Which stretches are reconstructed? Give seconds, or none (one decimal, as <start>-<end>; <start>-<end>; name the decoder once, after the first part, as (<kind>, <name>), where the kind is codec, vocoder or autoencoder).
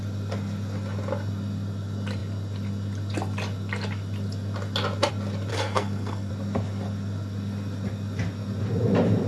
5.5-6.3 (codec, SNAC)